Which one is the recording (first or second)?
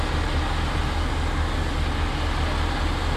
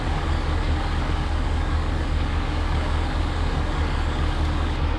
first